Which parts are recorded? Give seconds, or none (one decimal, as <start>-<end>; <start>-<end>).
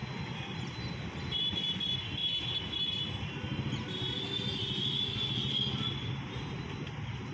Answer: 0.0-7.3